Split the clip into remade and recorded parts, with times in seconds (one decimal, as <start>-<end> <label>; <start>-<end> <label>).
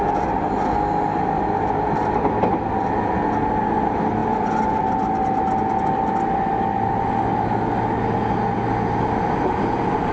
0.0-10.1 recorded